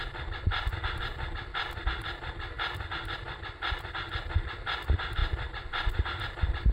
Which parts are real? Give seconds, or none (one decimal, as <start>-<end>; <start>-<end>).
0.0-5.2; 6.2-6.7